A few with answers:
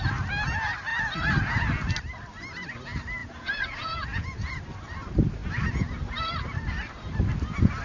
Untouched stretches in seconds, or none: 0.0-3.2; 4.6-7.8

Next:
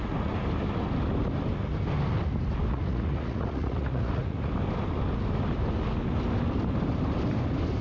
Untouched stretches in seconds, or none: 0.0-2.7; 4.5-7.8